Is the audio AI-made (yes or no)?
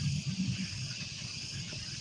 no